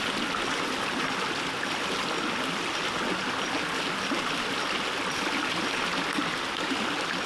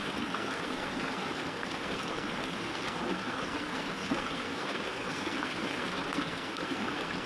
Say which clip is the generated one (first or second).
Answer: second